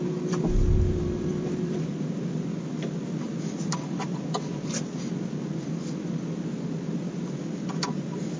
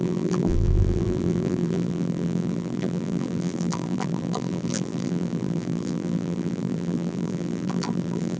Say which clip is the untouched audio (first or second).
first